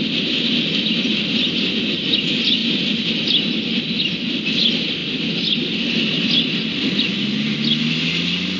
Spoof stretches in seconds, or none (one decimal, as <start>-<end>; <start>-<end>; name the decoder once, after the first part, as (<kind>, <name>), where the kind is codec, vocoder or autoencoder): none

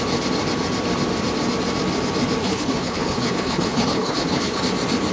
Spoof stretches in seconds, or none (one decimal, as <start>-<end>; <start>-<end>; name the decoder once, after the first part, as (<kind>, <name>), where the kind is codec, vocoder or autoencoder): 2.4-4.6 (codec, HILCodec)